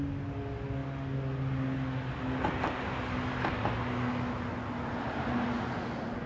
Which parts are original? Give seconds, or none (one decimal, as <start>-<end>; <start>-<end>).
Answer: 0.0-6.3